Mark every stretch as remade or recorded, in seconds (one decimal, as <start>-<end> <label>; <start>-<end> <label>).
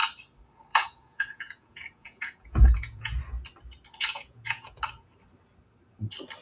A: 0.0-0.7 recorded; 0.7-3.2 remade; 3.2-4.1 recorded; 4.1-4.8 remade; 4.8-6.4 recorded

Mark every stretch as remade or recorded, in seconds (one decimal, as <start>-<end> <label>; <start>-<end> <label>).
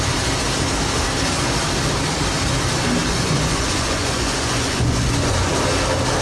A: 0.0-3.0 recorded; 3.0-5.5 remade; 5.5-6.2 recorded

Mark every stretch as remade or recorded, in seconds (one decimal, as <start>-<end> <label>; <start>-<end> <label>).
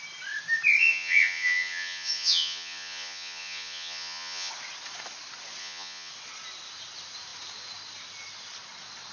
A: 0.0-0.8 recorded; 0.8-4.5 remade; 4.5-5.6 recorded; 5.6-6.1 remade; 6.1-9.1 recorded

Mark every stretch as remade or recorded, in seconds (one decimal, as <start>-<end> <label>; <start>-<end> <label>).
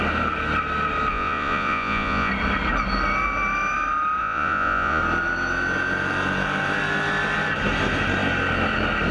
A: 0.0-1.1 recorded; 1.1-2.3 remade; 2.3-4.2 recorded; 4.2-5.0 remade; 5.0-9.1 recorded